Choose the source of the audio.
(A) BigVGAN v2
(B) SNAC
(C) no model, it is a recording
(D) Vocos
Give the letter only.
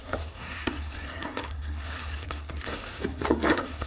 B